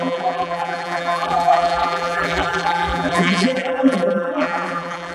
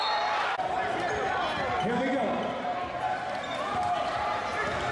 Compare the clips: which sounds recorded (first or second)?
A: second